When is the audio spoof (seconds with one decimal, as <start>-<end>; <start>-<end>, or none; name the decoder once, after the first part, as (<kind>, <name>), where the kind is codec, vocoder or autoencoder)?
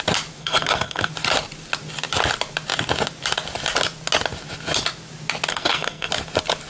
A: 0.4-1.1 (codec, SNAC); 5.5-6.1